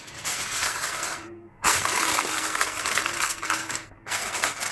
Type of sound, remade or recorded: remade